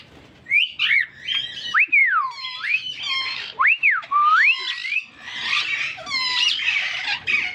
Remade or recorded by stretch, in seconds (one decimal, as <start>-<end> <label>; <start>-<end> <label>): 0.0-2.0 recorded; 2.0-4.1 remade; 4.1-7.5 recorded